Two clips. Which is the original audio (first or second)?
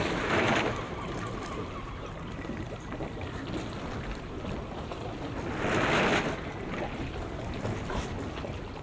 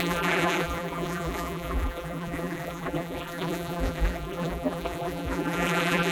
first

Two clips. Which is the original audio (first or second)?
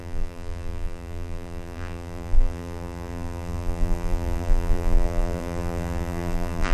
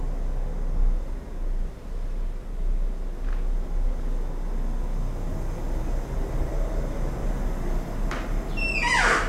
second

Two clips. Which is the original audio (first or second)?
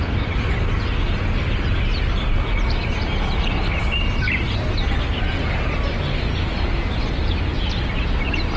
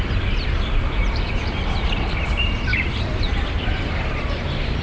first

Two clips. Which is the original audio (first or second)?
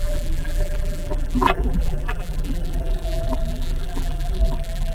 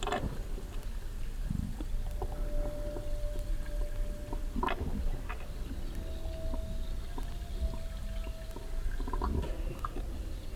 second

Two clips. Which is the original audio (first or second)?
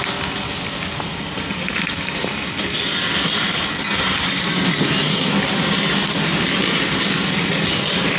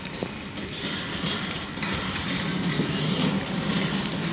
first